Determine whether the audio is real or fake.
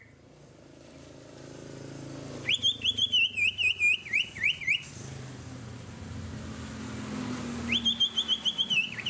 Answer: real